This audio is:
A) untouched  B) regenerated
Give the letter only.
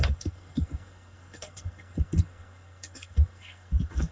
B